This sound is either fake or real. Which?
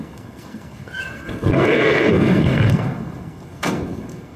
fake